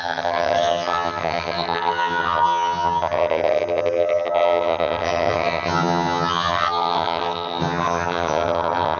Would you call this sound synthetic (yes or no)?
yes